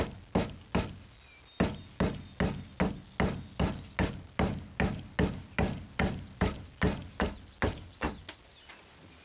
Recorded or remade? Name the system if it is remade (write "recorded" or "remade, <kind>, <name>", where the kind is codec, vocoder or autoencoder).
recorded